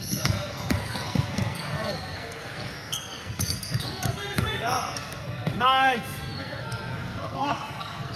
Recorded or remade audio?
remade